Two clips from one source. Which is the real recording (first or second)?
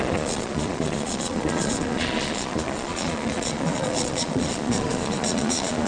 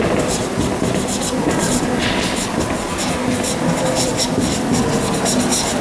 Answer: second